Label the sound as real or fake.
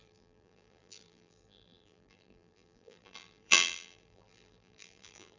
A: fake